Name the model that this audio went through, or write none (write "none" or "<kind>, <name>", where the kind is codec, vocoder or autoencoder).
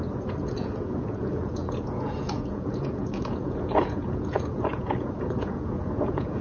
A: vocoder, Vocos